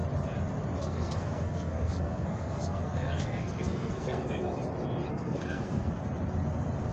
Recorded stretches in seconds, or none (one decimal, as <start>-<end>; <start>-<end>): 0.0-0.8; 4.5-5.1; 6.0-6.9